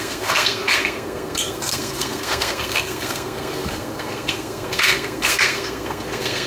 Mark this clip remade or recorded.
remade